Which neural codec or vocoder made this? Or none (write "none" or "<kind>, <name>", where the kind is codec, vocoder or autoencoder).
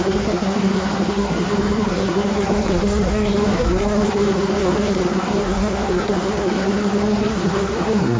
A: codec, SNAC